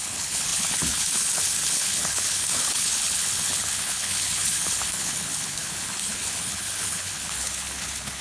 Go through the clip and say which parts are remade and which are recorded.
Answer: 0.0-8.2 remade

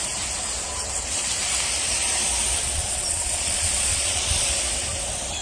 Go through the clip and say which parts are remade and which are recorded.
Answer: 0.0-2.6 recorded; 2.6-4.3 remade; 4.3-5.4 recorded

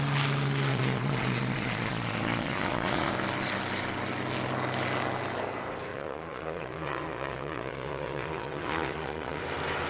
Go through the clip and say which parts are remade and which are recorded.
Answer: 0.0-0.7 recorded; 0.7-3.1 remade; 3.1-5.9 recorded; 5.9-9.4 remade; 9.4-9.9 recorded

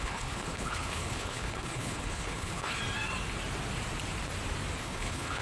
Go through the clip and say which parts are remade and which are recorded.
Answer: 0.0-2.8 remade; 2.8-4.8 recorded; 4.8-5.4 remade

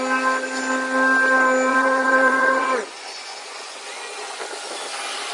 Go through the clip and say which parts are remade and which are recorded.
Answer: 0.0-1.7 recorded; 1.7-4.4 remade; 4.4-5.3 recorded

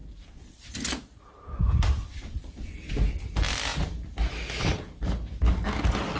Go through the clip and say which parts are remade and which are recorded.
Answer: 0.0-6.2 recorded

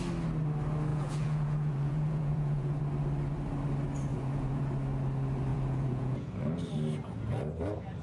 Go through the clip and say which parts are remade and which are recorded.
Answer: 0.0-0.9 recorded; 0.9-2.8 remade; 2.8-4.1 recorded; 4.1-4.6 remade; 4.6-5.5 recorded; 5.5-6.4 remade; 6.4-8.0 recorded

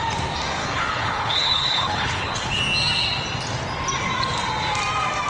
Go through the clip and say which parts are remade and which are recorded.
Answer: 0.0-0.6 recorded; 0.6-2.6 remade; 2.6-5.3 recorded